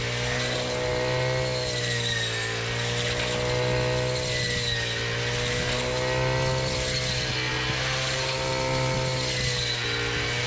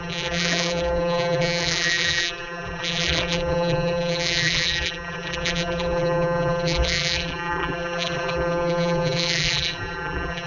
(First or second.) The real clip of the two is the first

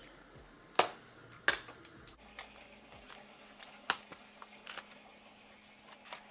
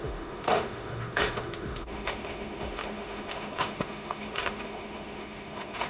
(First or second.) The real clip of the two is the first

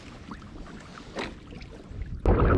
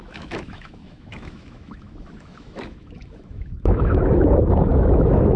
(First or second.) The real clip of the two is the first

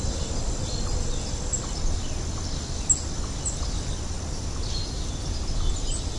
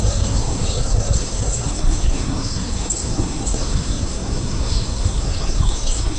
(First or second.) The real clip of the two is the first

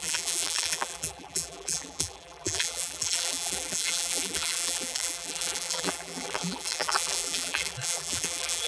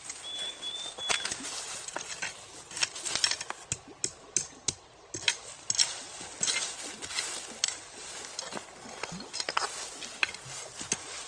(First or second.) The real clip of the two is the second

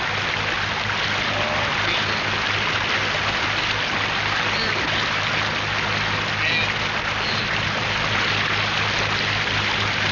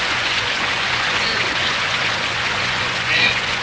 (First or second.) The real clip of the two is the first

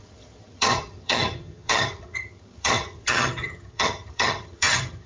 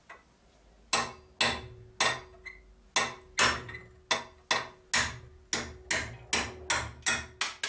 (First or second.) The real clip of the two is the second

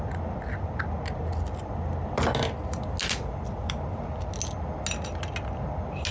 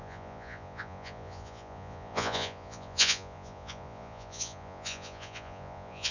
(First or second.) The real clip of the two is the first